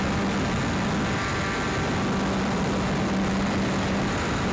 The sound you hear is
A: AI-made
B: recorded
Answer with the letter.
B